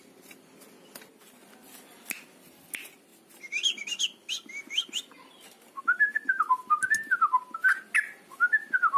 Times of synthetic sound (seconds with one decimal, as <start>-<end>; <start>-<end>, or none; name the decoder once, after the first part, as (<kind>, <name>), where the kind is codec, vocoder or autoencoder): none

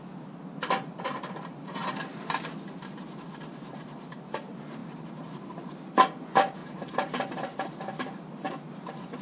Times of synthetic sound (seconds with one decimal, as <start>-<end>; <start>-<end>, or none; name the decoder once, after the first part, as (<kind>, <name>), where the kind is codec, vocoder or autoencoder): 6.6-7.3 (vocoder, BigVGAN v2)

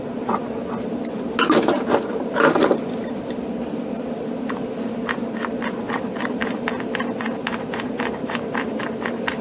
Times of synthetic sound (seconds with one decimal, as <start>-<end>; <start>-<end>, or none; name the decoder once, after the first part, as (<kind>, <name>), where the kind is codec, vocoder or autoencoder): 8.2-8.8 (vocoder, BigVGAN v2)

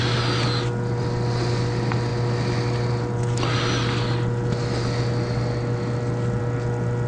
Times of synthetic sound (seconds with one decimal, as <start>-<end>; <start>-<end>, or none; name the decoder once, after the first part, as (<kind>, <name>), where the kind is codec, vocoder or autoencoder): none

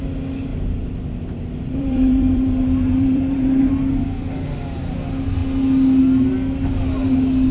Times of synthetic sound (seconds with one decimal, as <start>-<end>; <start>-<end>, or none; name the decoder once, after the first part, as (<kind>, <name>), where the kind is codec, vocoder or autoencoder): 0.5-3.7 (vocoder, BigVGAN v2)

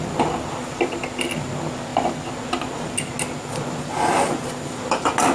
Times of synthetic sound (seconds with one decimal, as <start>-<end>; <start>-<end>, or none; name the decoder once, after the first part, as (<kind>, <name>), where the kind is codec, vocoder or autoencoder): none